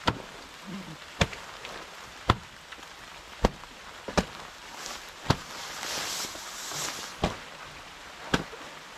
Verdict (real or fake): real